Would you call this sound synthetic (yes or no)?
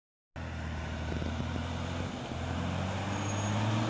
no